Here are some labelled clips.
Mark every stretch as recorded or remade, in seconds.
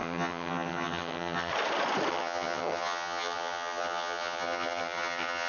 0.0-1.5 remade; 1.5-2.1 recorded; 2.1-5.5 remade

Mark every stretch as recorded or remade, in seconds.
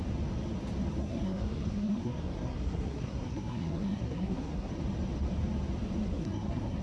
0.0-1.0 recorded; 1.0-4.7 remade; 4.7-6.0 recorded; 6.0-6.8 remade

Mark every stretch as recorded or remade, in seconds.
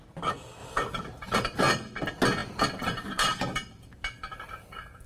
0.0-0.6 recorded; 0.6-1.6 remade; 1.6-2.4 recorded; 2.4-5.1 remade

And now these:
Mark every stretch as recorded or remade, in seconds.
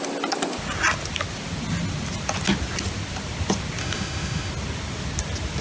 0.0-3.8 recorded; 3.8-4.5 remade; 4.5-5.6 recorded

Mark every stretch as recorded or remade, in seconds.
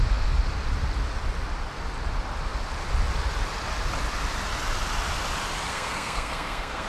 0.0-5.7 recorded; 5.7-6.9 remade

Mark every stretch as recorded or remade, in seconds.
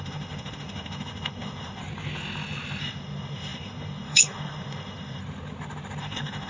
0.0-1.8 remade; 1.8-2.8 recorded; 2.8-5.2 remade; 5.2-6.0 recorded; 6.0-6.5 remade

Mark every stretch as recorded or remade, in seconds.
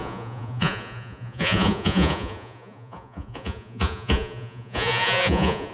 0.0-5.7 remade